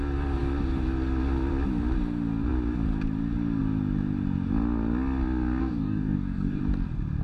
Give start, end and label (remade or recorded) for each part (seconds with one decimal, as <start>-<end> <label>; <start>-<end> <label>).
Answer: 0.0-5.6 recorded; 5.6-6.6 remade; 6.6-7.2 recorded